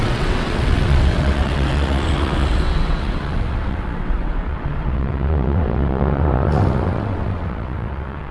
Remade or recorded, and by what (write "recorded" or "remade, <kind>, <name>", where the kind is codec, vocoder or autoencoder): remade, vocoder, WaveNeXt